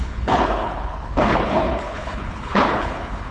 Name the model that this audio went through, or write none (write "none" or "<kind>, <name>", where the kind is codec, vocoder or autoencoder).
codec, HILCodec